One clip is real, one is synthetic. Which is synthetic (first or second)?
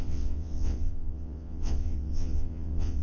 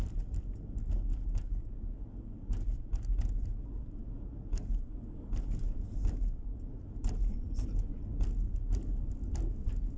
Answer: first